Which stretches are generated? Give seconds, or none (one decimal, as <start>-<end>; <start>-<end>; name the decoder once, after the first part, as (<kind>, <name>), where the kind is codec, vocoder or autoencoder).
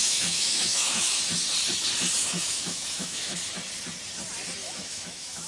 0.0-1.2 (autoencoder, DAC-VAE); 2.2-3.4; 4.6-5.5